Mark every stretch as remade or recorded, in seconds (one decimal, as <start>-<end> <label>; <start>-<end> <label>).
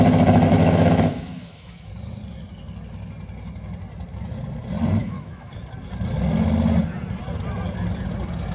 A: 0.0-0.5 recorded; 0.5-1.9 remade; 1.9-5.0 recorded; 5.0-5.5 remade; 5.5-8.5 recorded